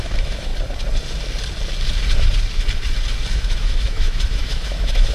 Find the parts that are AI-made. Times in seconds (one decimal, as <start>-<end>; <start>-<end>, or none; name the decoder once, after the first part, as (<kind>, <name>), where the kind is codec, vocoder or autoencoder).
0.0-0.5 (autoencoder, DAC-VAE); 3.3-5.1